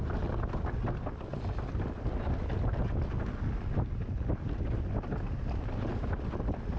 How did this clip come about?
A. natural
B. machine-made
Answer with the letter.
A